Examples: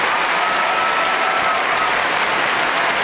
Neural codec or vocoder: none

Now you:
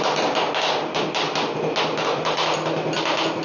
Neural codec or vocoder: none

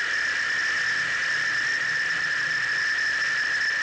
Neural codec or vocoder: none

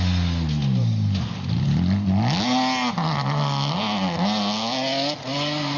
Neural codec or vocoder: none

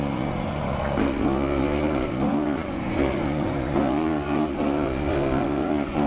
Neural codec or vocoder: vocoder, Vocos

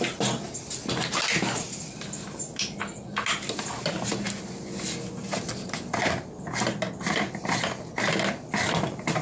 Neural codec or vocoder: none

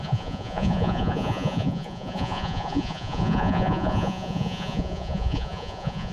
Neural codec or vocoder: vocoder, Vocos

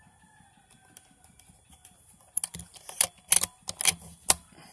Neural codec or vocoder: none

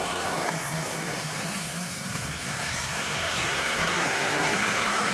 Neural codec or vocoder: codec, SNAC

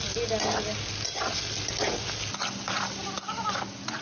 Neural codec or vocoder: none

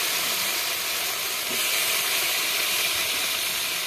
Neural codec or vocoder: none